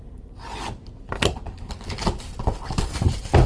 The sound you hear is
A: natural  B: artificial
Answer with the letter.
A